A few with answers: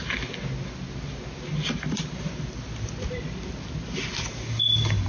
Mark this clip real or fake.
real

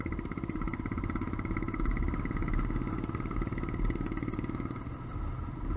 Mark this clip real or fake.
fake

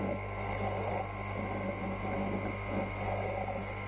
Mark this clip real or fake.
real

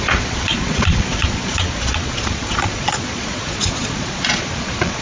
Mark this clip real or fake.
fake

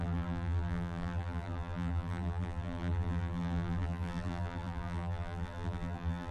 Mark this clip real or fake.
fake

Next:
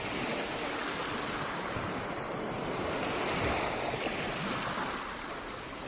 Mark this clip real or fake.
real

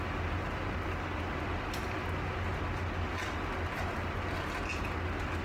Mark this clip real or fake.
real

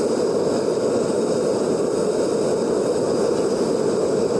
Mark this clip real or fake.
real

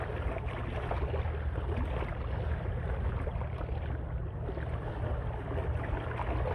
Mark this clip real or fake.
real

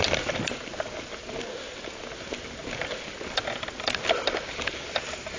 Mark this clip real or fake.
real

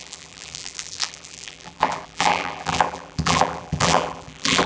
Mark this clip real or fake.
fake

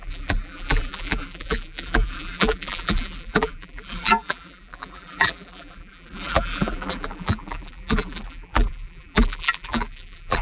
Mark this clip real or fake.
fake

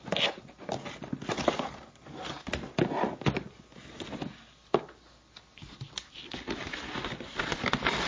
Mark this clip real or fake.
real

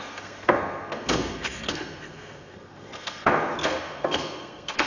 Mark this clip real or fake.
fake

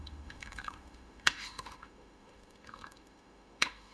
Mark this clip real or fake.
fake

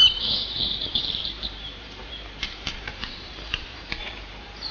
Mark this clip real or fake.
fake